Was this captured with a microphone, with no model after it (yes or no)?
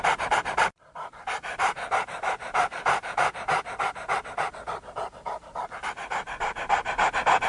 no